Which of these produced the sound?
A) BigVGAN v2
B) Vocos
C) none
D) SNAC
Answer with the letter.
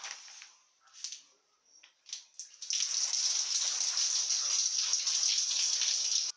C